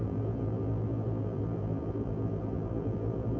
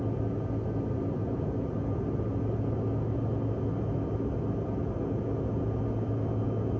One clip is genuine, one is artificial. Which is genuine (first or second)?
second